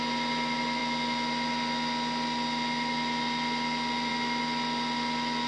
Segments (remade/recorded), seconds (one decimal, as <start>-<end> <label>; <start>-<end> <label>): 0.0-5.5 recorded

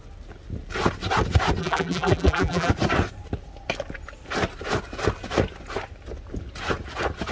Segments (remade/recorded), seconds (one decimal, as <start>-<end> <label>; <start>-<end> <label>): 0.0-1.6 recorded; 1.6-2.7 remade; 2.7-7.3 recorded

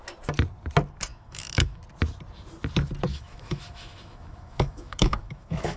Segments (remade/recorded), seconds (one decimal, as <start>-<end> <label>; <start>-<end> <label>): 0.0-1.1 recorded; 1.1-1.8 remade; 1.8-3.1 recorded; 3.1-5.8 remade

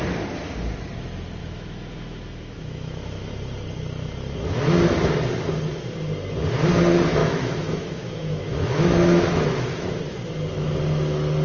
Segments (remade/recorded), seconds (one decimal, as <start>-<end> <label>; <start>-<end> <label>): 0.0-1.4 recorded; 1.4-3.3 remade; 3.3-7.2 recorded; 7.2-10.0 remade; 10.0-11.4 recorded

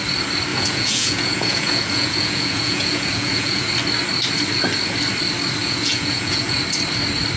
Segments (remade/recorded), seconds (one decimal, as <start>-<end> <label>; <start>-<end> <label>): 0.0-0.5 recorded; 0.5-3.7 remade; 3.7-5.6 recorded; 5.6-6.6 remade; 6.6-7.4 recorded

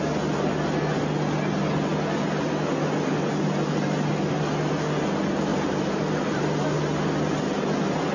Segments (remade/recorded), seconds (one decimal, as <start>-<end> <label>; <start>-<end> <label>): 0.0-5.5 recorded; 5.5-6.4 remade; 6.4-8.1 recorded

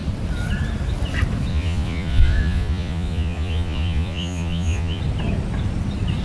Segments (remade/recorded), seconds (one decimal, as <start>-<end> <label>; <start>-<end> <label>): 0.0-1.5 recorded; 1.5-5.0 remade; 5.0-6.2 recorded